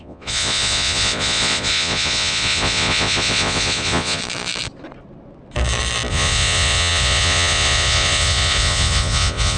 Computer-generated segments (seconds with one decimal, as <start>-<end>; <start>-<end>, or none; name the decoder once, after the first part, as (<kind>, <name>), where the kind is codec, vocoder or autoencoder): 0.0-4.2 (vocoder, Vocos); 6.1-9.6